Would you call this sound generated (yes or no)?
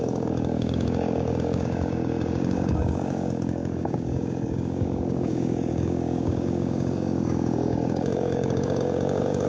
yes